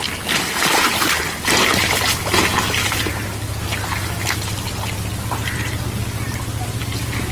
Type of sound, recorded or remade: recorded